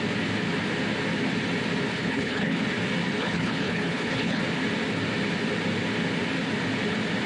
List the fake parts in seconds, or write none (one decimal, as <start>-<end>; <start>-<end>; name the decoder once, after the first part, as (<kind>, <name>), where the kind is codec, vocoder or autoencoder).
1.9-2.6 (codec, HILCodec); 3.2-4.4